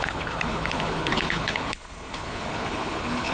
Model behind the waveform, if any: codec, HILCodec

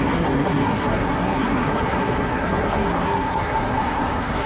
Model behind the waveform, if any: codec, SNAC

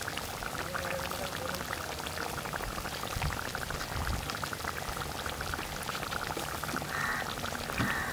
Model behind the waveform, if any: none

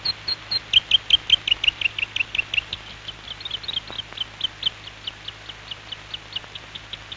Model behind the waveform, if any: none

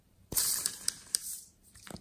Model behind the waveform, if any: vocoder, BigVGAN v2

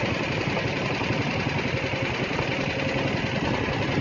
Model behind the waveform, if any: none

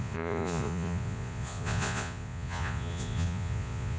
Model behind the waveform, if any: vocoder, Vocos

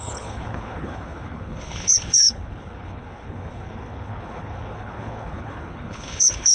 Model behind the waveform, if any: codec, HILCodec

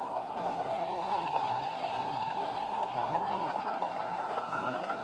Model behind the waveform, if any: codec, SNAC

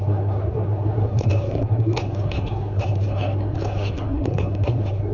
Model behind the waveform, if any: codec, SNAC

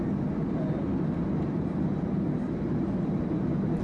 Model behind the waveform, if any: none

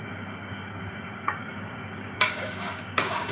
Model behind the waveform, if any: codec, DAC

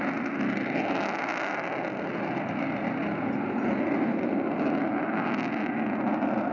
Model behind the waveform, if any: none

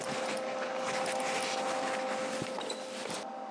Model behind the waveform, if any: none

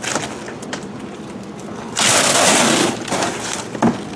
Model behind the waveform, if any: none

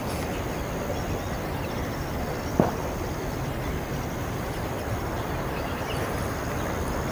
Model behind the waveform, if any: none